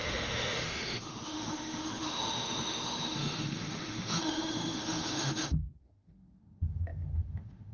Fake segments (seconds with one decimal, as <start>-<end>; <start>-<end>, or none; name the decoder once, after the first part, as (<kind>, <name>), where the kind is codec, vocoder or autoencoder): 0.0-7.7 (autoencoder, DAC-VAE)